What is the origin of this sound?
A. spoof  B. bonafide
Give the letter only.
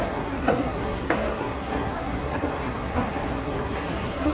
A